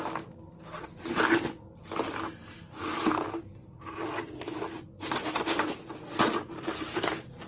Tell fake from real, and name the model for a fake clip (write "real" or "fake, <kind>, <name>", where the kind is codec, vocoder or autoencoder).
real